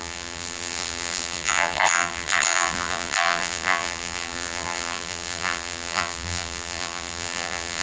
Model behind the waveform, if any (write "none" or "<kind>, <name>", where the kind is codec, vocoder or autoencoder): vocoder, BigVGAN v2